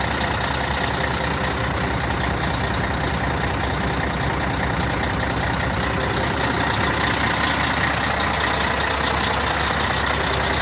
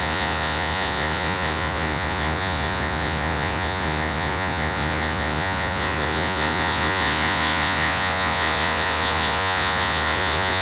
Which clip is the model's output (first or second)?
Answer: second